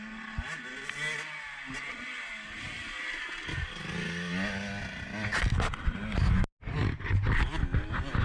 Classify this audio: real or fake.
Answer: real